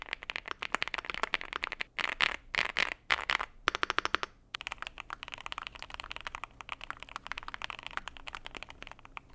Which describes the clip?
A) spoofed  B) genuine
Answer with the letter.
B